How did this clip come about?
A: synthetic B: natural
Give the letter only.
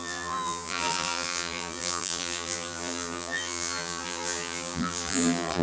A